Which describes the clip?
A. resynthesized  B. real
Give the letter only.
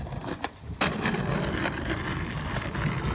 B